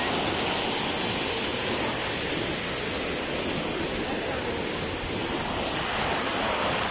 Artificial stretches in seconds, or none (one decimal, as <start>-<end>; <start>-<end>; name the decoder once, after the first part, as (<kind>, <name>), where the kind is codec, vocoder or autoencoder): none